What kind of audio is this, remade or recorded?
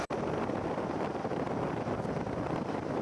recorded